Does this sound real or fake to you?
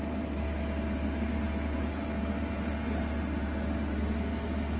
real